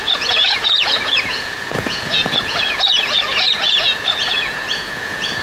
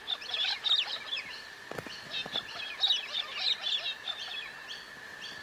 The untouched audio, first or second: second